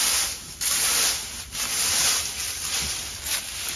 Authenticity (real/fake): real